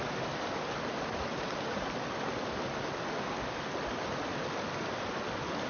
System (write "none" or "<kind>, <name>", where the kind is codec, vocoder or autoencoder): none